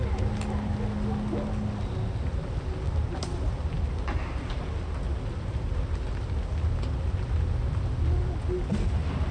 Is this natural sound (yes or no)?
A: yes